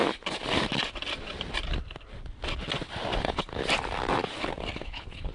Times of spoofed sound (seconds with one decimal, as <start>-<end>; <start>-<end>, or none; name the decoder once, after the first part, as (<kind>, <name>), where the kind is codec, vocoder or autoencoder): 3.2-3.6 (codec, HILCodec); 4.8-5.3